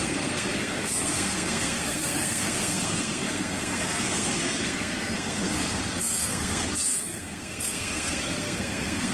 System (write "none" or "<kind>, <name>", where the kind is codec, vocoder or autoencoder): codec, SNAC